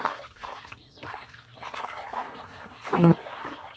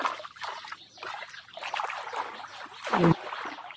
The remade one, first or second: first